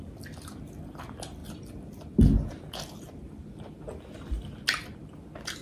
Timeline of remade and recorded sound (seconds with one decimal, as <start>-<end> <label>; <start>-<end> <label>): 0.0-5.6 recorded